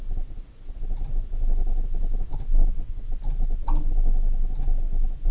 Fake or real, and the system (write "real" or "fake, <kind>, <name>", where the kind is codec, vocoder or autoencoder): real